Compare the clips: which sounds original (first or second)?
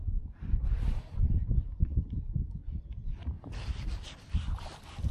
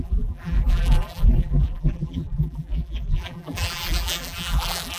first